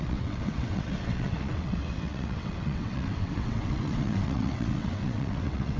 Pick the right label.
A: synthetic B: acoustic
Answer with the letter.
A